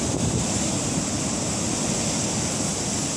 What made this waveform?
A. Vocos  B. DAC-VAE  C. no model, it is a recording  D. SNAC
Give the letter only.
C